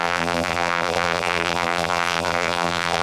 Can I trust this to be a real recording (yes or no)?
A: no